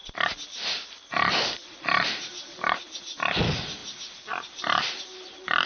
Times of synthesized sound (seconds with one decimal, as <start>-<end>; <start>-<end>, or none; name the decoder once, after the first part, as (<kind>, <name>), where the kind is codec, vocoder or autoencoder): none